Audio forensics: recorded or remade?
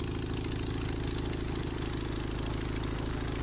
recorded